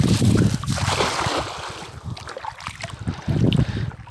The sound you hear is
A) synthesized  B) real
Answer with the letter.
B